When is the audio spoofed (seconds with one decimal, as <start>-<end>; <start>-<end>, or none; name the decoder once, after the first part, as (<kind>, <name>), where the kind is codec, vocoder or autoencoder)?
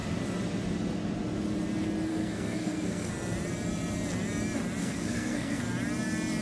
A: 2.1-3.1 (codec, SNAC); 4.8-5.6